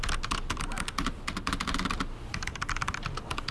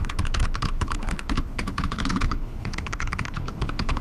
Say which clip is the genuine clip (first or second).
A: first